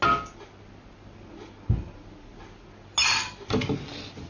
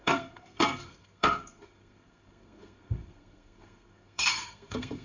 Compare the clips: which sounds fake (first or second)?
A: second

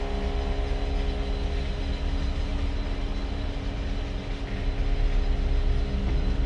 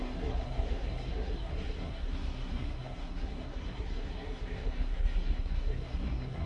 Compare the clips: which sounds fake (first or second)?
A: second